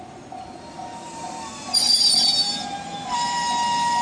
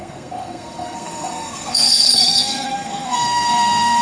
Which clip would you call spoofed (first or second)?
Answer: second